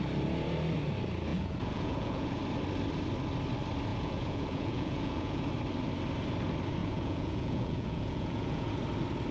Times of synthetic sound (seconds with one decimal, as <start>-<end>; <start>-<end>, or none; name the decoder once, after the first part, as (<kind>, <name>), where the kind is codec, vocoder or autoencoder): 1.3-2.4 (vocoder, Vocos); 3.9-5.5; 6.8-8.7